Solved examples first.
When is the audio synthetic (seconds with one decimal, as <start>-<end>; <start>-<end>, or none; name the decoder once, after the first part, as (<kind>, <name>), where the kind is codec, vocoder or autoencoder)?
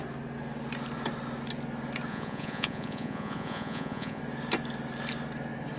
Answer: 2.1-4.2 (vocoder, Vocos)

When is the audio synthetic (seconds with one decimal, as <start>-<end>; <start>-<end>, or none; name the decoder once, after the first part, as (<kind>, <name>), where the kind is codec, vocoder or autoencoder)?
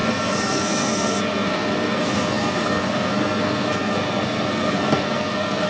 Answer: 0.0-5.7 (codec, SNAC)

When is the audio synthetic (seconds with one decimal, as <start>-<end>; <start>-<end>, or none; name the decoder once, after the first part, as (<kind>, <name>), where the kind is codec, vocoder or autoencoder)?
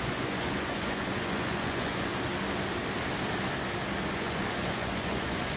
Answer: 0.0-2.1 (vocoder, Vocos); 4.1-5.6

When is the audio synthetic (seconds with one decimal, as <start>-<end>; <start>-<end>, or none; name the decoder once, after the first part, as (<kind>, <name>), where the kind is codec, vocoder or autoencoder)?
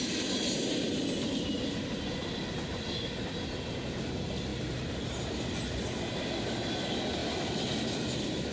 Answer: none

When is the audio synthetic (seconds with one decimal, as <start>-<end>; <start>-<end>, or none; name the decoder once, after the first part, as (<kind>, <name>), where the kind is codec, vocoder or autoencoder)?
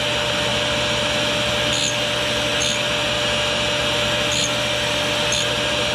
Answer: none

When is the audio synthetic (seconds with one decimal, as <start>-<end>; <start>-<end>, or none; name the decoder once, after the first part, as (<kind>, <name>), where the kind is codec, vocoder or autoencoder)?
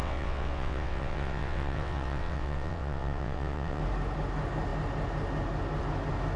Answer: 0.0-3.8 (vocoder, WaveNeXt)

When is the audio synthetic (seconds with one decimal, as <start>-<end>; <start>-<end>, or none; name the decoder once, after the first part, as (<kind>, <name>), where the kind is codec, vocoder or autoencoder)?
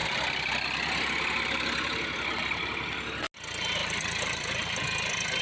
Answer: 3.8-5.4 (vocoder, BigVGAN v2)